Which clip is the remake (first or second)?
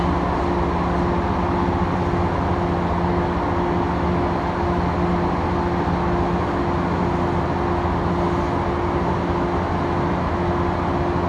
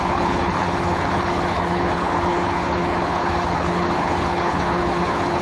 second